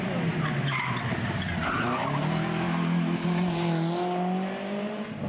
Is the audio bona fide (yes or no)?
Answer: yes